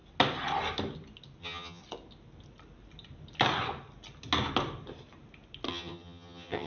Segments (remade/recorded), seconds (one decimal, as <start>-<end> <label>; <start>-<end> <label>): 0.0-1.4 recorded; 1.4-1.8 remade; 1.8-5.7 recorded; 5.7-6.7 remade